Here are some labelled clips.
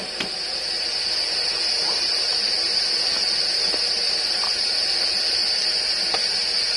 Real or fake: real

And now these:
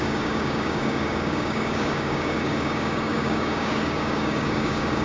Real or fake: fake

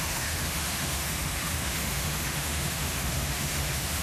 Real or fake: fake